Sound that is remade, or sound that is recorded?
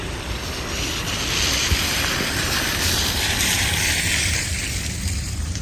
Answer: remade